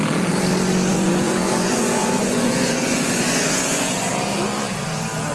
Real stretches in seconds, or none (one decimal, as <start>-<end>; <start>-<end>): 0.0-0.9; 4.1-5.3